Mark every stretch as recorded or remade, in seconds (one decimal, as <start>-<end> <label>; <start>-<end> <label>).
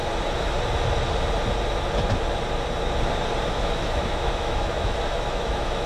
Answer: 0.0-3.5 recorded; 3.5-5.9 remade